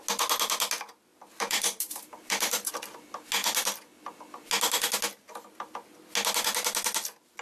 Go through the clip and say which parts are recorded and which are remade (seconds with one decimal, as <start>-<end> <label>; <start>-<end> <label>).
0.0-1.1 recorded; 1.1-2.7 remade; 2.7-7.4 recorded